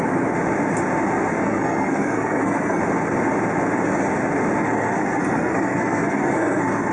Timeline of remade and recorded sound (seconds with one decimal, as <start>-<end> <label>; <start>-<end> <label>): 0.0-1.4 recorded; 1.4-2.8 remade; 2.8-4.6 recorded; 4.6-6.9 remade